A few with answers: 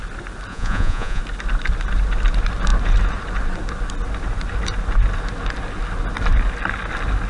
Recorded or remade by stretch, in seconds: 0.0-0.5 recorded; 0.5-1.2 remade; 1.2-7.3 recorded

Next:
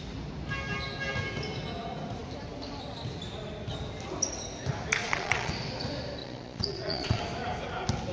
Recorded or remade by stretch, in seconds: 0.0-5.0 recorded; 5.0-5.5 remade; 5.5-6.2 recorded; 6.2-7.2 remade; 7.2-8.1 recorded

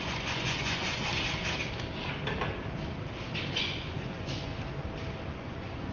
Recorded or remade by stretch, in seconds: 0.0-1.0 remade; 1.0-3.6 recorded; 3.6-4.5 remade; 4.5-5.3 recorded; 5.3-5.9 remade

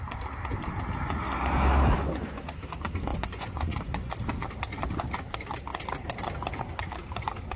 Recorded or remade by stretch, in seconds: 0.0-3.1 recorded; 3.1-4.1 remade; 4.1-7.6 recorded

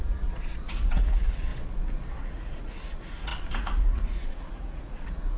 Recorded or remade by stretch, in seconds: 0.0-1.5 remade; 1.5-2.2 recorded; 2.2-5.4 remade